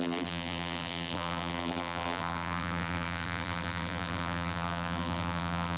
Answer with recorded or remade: remade